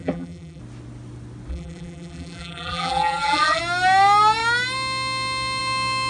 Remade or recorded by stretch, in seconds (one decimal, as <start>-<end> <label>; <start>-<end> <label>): 0.0-0.6 remade; 0.6-1.5 recorded; 1.5-3.6 remade; 3.6-6.1 recorded